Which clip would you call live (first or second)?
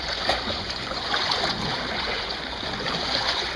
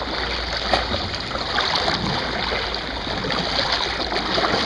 second